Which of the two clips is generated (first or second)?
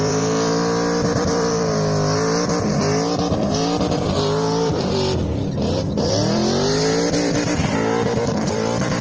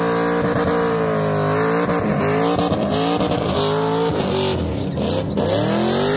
first